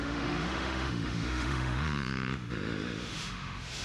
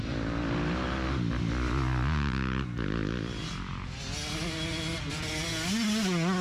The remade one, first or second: first